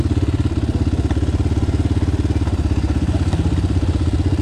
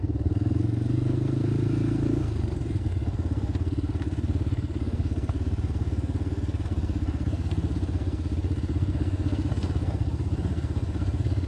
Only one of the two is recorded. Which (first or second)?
first